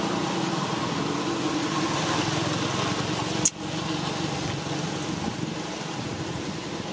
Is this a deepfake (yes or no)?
no